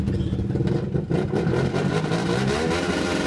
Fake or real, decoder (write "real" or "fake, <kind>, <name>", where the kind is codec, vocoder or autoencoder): real